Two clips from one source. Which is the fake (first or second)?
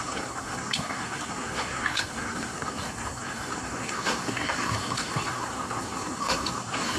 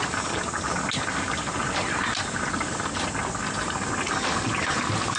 first